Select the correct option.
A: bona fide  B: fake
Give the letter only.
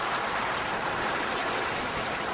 A